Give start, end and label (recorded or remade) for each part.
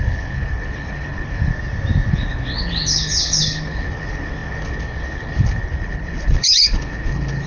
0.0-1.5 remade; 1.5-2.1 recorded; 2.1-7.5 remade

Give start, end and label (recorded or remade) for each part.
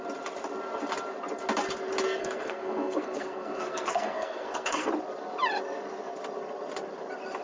0.0-2.2 recorded; 2.2-4.9 remade; 4.9-7.4 recorded